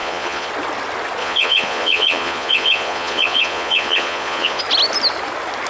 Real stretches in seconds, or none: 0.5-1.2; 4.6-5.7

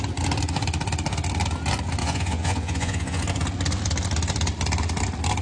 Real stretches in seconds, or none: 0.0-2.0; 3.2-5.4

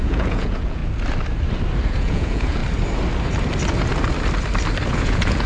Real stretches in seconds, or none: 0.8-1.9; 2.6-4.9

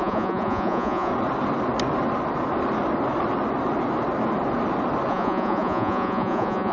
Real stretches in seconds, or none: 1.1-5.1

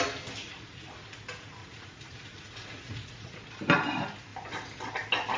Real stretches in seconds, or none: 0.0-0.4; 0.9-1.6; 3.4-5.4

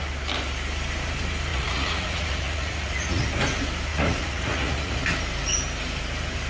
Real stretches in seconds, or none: 0.0-1.5; 3.3-3.9; 5.0-6.5

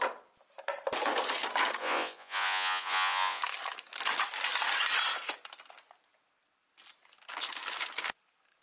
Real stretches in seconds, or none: 0.0-1.8; 3.4-8.6

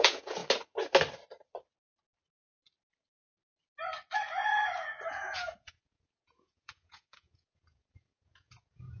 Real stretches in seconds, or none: 0.4-5.1